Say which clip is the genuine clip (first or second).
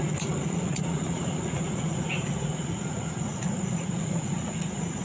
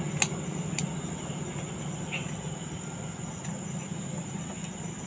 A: second